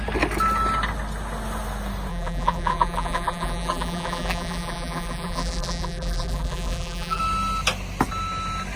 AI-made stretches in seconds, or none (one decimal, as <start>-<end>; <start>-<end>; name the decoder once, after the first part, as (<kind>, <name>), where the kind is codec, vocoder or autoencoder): 2.1-7.2 (vocoder, BigVGAN v2)